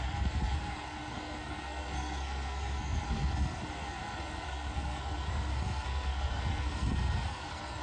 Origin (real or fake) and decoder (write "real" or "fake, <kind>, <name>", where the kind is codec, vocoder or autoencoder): fake, codec, SNAC